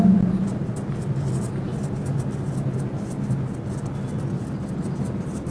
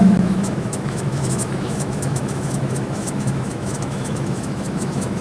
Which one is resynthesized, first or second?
second